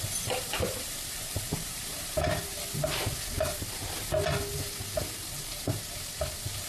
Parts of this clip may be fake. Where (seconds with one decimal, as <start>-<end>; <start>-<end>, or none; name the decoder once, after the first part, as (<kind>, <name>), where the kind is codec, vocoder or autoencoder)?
0.0-2.5 (vocoder, BigVGAN v2); 5.0-6.7